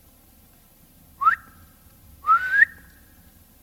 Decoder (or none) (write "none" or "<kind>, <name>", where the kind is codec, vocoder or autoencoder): none